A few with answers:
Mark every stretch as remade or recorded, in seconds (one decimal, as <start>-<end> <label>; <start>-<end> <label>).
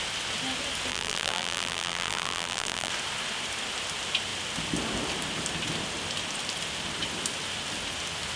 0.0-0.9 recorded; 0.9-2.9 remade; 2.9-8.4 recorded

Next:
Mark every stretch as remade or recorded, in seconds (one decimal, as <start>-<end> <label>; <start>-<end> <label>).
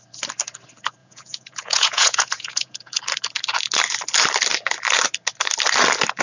0.0-1.0 recorded; 1.0-3.0 remade; 3.0-6.2 recorded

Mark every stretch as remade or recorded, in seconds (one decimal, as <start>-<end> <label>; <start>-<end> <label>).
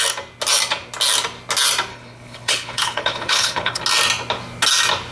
0.0-1.9 recorded; 1.9-3.8 remade; 3.8-5.1 recorded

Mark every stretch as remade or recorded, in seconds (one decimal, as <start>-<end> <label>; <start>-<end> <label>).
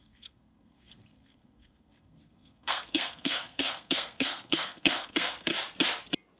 0.0-5.5 remade; 5.5-6.4 recorded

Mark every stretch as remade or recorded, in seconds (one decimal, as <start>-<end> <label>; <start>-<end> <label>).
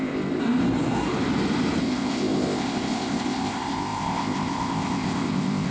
0.0-0.4 remade; 0.4-1.8 recorded; 1.8-5.7 remade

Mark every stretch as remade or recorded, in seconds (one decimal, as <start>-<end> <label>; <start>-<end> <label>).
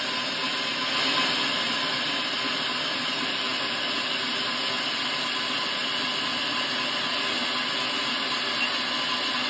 0.0-9.5 recorded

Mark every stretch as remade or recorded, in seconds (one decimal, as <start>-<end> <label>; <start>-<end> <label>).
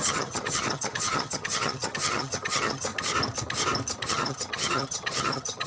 0.0-2.9 remade; 2.9-4.1 recorded; 4.1-5.7 remade